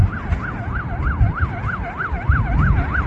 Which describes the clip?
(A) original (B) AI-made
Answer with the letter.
A